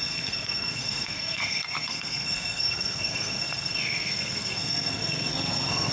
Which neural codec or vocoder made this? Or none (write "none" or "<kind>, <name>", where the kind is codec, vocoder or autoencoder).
codec, SNAC